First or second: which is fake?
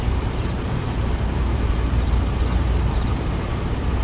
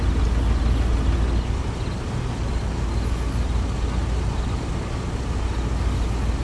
first